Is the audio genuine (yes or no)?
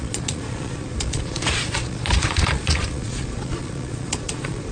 no